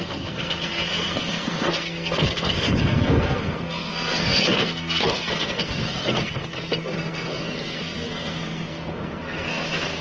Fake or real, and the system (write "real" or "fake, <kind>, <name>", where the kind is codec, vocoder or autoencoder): fake, codec, SNAC